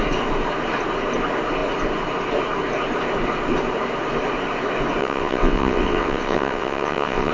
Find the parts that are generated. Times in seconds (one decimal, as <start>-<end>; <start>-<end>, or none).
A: 5.0-7.3